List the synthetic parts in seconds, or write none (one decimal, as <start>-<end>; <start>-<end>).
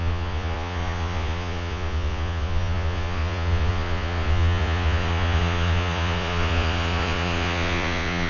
0.0-8.3